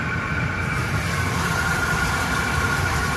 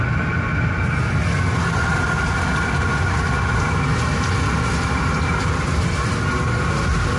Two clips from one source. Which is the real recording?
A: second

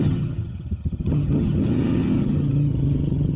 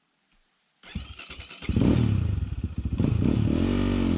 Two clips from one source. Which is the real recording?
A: second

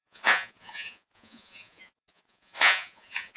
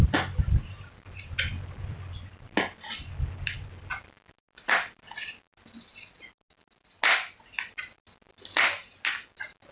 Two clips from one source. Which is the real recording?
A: second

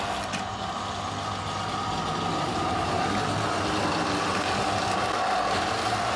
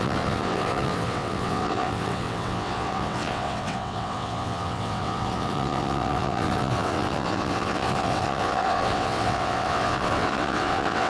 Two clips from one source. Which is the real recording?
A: first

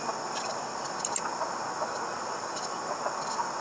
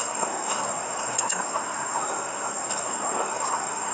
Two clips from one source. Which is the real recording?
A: first